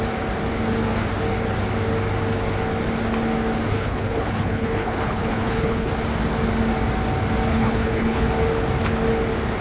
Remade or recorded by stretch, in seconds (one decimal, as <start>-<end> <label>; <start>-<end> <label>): 0.0-3.7 recorded; 3.7-5.9 remade; 5.9-7.5 recorded; 7.5-8.3 remade; 8.3-9.6 recorded